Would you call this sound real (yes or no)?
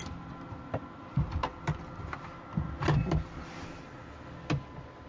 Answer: yes